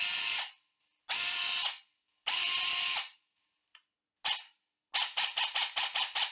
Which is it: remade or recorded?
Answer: recorded